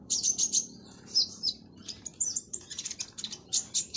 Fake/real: fake